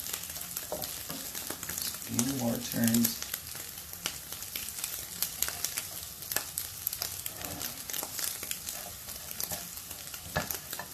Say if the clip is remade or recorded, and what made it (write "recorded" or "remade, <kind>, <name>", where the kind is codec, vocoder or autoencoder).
recorded